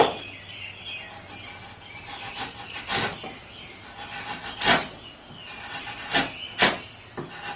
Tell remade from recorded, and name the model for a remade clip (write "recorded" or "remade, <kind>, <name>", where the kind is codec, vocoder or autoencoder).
recorded